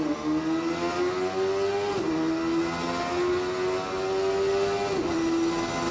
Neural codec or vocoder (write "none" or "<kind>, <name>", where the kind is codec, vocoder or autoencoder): none